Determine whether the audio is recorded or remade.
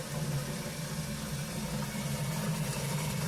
recorded